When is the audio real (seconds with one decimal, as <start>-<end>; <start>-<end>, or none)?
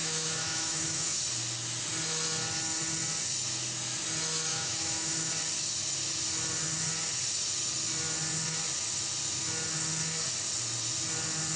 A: 1.2-4.5; 5.3-11.6